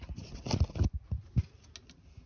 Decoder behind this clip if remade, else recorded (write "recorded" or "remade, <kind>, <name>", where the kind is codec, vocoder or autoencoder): recorded